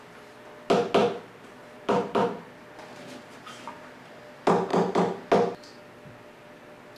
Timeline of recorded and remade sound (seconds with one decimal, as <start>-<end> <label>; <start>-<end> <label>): 0.0-1.0 recorded; 1.0-4.2 remade; 4.2-4.7 recorded; 4.7-5.3 remade; 5.3-7.0 recorded